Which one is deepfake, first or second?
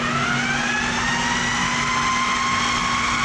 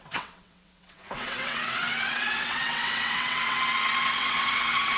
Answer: second